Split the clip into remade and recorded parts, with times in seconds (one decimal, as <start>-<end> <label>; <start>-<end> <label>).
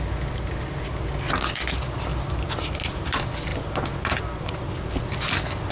0.0-5.7 recorded